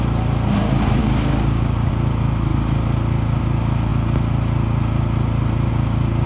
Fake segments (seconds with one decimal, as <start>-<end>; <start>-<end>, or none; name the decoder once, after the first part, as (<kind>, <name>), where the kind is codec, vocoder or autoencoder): 1.0-1.9 (codec, DAC)